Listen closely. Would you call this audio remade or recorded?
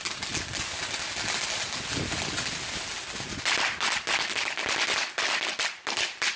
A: recorded